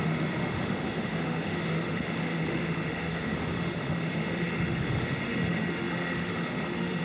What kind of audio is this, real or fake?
fake